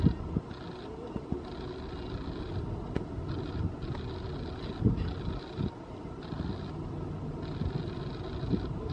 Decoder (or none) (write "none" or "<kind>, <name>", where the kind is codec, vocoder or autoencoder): none